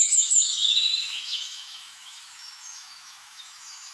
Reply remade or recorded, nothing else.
remade